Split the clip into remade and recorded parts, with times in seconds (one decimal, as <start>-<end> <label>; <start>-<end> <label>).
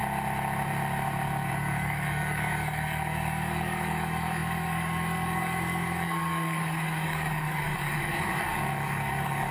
0.0-1.5 recorded; 1.5-9.5 remade